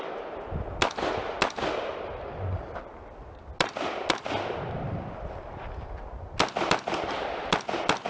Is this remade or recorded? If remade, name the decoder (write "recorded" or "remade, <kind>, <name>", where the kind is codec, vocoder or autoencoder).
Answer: recorded